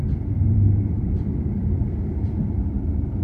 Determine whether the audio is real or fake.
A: fake